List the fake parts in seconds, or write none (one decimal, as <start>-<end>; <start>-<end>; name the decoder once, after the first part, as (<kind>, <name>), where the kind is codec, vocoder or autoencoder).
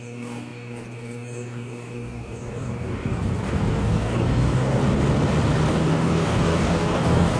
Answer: 0.0-4.8 (codec, DAC); 5.7-7.4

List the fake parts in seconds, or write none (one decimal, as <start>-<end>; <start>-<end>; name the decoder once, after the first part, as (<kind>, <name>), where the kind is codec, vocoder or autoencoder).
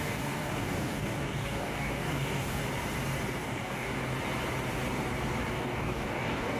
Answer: 0.0-2.6 (codec, DAC); 3.4-4.0; 5.5-6.6